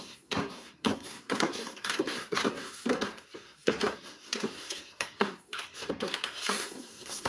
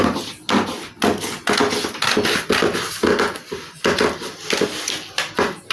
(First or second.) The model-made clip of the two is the first